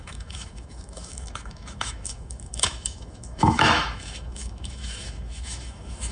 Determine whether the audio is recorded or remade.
remade